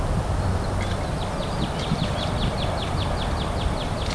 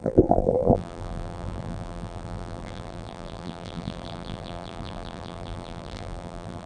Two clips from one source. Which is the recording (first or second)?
first